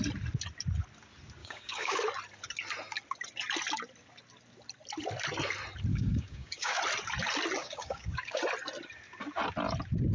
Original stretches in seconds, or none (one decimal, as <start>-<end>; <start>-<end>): 0.0-1.4; 2.0-5.9; 6.8-7.6; 8.4-10.1